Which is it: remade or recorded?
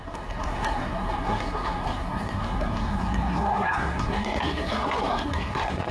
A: remade